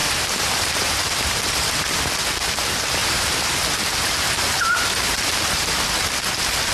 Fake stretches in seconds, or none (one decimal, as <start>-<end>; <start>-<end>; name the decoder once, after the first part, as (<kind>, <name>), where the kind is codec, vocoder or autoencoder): 0.0-2.0 (vocoder, BigVGAN v2); 3.0-3.6; 4.0-5.7